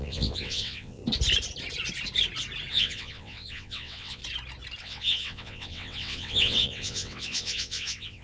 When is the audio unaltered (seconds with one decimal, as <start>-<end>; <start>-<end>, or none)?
1.0-2.7; 4.2-4.8